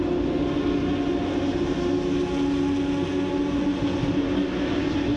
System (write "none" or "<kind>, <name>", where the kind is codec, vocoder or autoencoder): none